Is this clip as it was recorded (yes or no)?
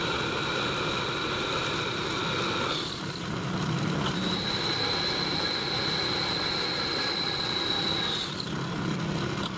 yes